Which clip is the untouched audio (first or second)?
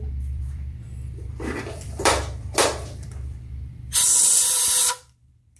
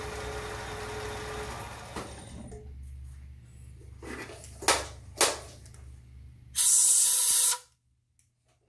second